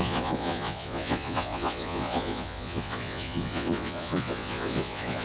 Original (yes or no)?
no